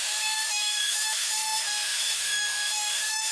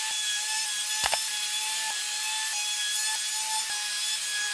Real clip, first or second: second